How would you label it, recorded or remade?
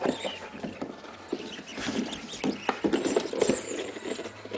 recorded